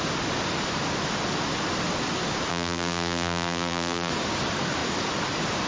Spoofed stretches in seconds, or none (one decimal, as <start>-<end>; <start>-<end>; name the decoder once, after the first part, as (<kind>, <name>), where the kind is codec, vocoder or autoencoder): 2.5-4.1 (vocoder, BigVGAN v2)